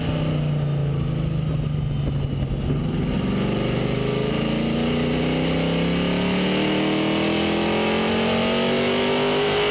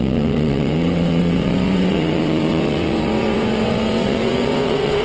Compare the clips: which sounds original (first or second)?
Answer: first